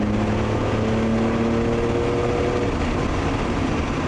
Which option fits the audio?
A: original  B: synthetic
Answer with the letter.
A